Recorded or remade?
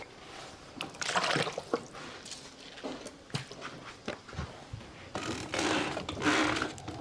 recorded